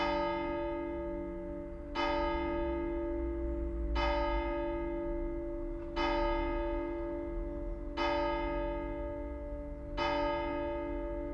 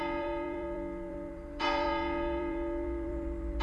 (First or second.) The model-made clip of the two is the second